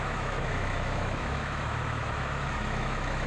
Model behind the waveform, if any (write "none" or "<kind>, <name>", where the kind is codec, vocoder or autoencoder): autoencoder, DAC-VAE